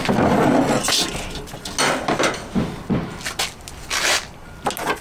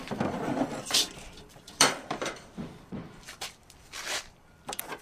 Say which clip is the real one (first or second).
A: first